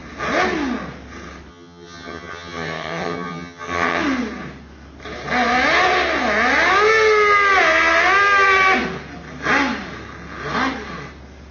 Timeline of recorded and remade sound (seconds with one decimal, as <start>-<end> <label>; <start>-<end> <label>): 0.0-1.5 recorded; 1.5-4.0 remade; 4.0-11.5 recorded